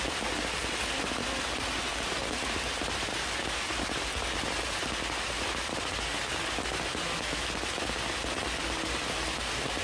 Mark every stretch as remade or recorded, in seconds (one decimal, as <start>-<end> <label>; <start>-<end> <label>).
0.0-9.8 recorded